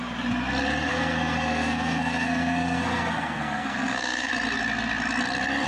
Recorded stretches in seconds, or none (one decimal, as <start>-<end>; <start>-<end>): 0.0-0.9; 4.3-5.7